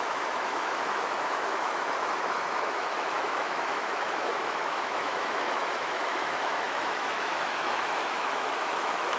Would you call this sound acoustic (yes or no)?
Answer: no